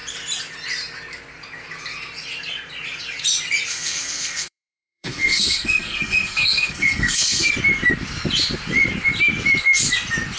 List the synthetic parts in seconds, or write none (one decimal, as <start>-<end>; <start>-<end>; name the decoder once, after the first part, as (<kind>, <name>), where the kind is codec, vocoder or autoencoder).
3.7-7.5 (codec, SNAC)